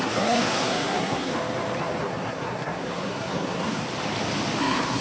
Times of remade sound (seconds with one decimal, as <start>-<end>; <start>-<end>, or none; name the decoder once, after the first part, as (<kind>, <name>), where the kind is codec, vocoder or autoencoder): 0.0-1.3 (codec, SNAC); 2.0-3.8; 4.6-5.0